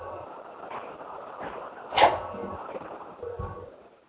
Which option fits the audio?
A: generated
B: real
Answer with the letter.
B